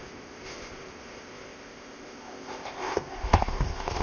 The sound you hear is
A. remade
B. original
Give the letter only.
A